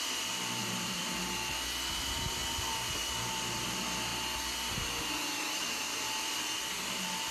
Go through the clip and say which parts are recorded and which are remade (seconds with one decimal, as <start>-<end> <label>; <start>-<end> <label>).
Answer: 0.0-0.6 recorded; 0.6-1.2 remade; 1.2-7.3 recorded